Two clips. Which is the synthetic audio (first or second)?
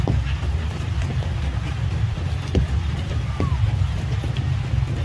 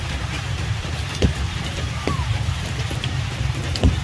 second